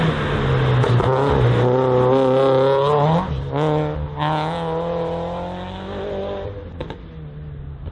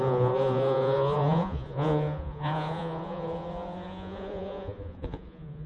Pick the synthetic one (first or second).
second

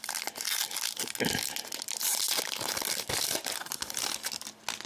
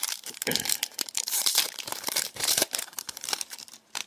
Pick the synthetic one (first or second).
second